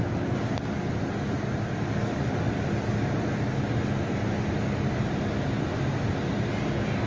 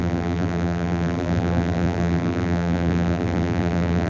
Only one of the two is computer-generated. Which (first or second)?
second